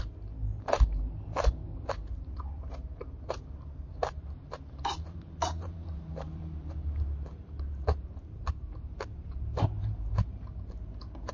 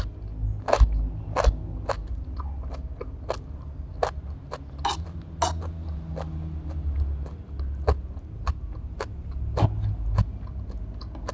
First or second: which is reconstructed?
first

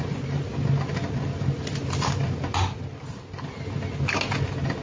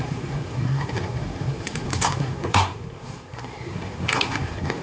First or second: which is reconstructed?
second